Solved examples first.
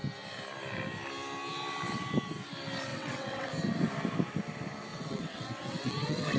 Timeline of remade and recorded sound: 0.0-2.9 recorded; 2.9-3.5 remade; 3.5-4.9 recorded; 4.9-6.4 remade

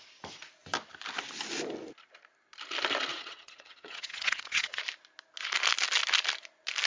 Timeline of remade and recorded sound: 0.0-3.1 recorded; 3.1-4.8 remade; 4.8-6.9 recorded

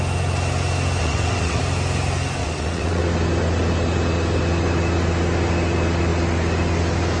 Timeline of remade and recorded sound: 0.0-1.0 recorded; 1.0-1.6 remade; 1.6-2.4 recorded; 2.4-3.0 remade; 3.0-7.2 recorded

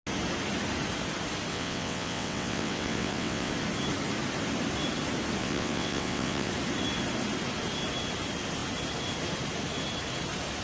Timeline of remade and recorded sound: 0.0-1.5 recorded; 1.5-3.5 remade; 3.5-5.4 recorded; 5.4-6.5 remade; 6.5-10.6 recorded

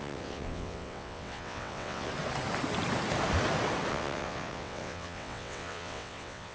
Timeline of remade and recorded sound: 0.0-2.1 remade; 2.1-3.9 recorded; 3.9-6.5 remade

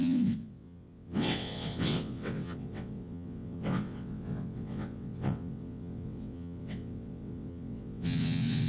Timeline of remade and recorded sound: 0.0-8.7 remade

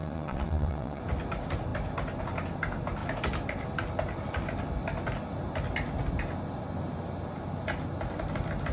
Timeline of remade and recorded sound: 0.0-1.0 remade; 1.0-8.7 recorded

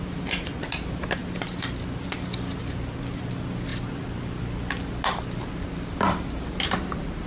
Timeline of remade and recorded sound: 0.0-7.3 recorded